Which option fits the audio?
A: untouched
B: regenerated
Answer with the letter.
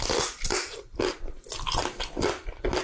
B